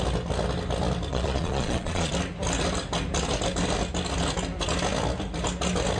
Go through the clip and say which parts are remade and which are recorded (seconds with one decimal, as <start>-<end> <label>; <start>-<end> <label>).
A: 0.0-1.1 recorded; 1.1-2.1 remade; 2.1-6.0 recorded